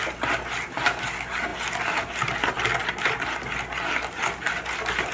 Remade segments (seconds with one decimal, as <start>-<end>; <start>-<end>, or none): none